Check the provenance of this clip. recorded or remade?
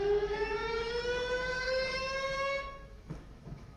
remade